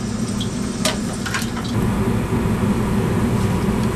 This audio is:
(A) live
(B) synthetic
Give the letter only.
A